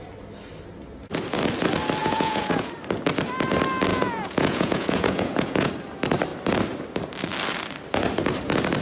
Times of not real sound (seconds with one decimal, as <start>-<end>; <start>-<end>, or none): 2.0-2.7; 3.9-5.7